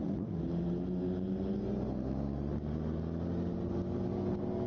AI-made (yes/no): no